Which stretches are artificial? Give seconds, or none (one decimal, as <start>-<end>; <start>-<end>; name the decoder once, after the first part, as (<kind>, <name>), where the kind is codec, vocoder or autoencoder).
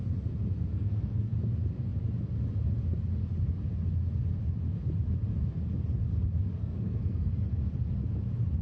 0.7-1.3 (codec, SNAC); 6.6-7.3